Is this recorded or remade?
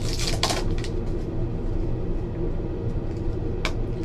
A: recorded